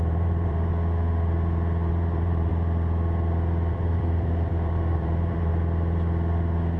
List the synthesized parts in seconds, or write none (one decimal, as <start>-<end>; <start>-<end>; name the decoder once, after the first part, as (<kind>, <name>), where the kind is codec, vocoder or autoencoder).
0.0-0.7 (vocoder, BigVGAN v2); 1.9-2.5; 3.7-5.5